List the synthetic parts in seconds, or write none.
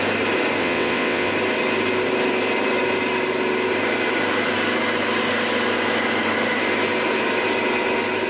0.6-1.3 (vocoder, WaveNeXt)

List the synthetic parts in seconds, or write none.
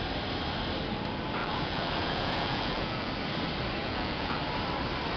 1.4-3.1 (vocoder, Vocos); 3.8-4.4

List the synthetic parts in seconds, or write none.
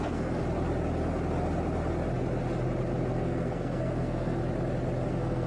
0.0-0.4 (codec, SNAC); 3.1-4.4; 5.1-5.5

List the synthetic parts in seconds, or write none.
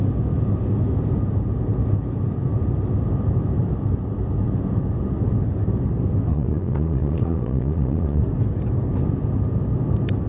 6.3-8.2 (vocoder, Vocos)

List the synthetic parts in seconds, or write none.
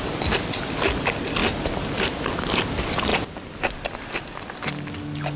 none